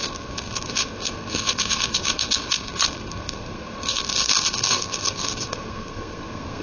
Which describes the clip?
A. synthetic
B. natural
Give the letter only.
A